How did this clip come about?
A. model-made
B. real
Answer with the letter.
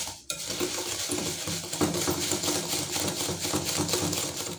B